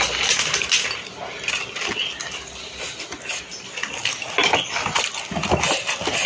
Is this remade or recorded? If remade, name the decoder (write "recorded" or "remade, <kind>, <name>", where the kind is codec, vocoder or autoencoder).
recorded